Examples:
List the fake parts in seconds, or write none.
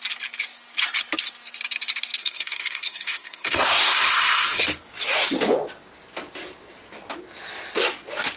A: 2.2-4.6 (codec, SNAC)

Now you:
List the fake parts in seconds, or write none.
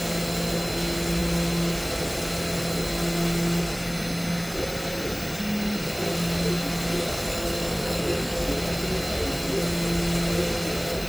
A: 7.3-8.5 (codec, SNAC)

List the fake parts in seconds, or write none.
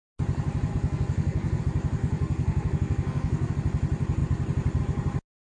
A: 0.7-1.6 (codec, SNAC); 2.0-3.5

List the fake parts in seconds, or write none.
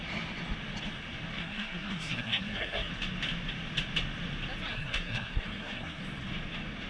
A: 1.4-2.9 (codec, SNAC); 4.7-6.0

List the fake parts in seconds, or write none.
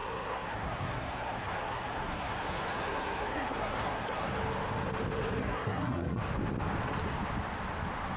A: 0.0-4.3 (codec, SNAC); 5.4-6.2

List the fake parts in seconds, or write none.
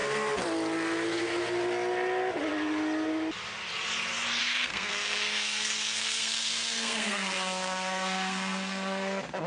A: 4.4-9.5 (codec, SNAC)